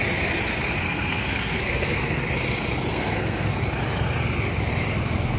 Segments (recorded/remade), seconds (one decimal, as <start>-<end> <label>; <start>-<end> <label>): 0.0-0.8 recorded; 0.8-2.2 remade; 2.2-2.9 recorded; 2.9-3.6 remade; 3.6-5.4 recorded